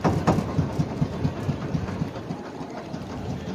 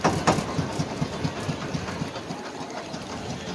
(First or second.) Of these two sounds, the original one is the second